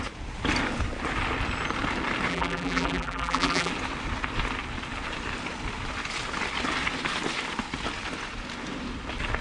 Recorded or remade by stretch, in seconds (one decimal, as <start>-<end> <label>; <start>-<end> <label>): 0.0-2.3 recorded; 2.3-3.7 remade; 3.7-9.4 recorded